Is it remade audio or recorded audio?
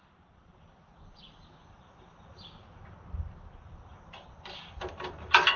recorded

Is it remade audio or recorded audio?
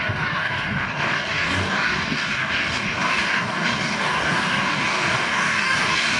remade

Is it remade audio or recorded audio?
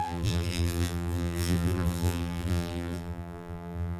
remade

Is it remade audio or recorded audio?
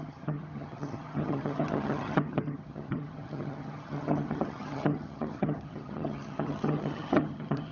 remade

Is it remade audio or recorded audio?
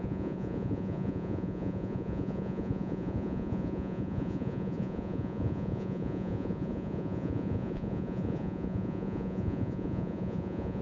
remade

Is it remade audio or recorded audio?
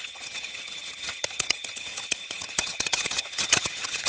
remade